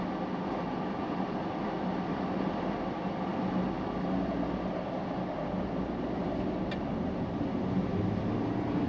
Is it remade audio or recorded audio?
recorded